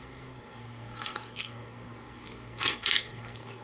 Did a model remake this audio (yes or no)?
yes